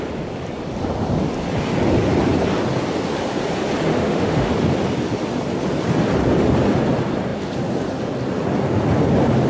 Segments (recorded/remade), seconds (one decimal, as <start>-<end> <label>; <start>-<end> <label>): 0.0-3.9 recorded; 3.9-4.5 remade; 4.5-9.5 recorded

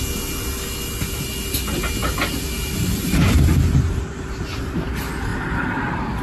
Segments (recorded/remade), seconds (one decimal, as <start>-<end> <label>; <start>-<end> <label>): 0.0-2.0 recorded; 2.0-4.7 remade; 4.7-5.3 recorded; 5.3-6.2 remade

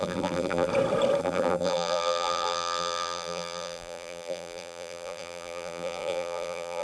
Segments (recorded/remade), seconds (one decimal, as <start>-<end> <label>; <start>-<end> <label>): 0.0-0.7 remade; 0.7-1.2 recorded; 1.2-6.8 remade